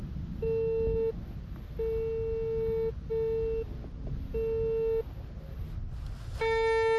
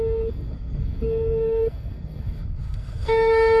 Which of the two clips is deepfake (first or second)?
second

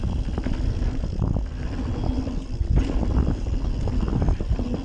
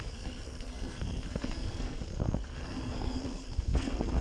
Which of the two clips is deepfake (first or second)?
second